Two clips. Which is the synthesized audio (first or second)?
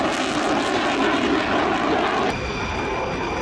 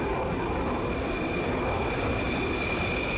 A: second